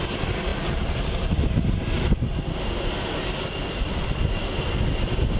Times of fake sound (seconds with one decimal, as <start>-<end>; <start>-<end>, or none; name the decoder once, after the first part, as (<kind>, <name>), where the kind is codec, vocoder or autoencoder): none